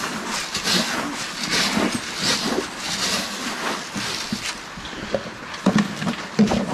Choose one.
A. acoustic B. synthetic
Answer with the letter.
A